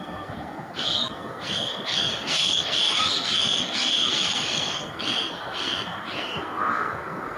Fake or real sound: fake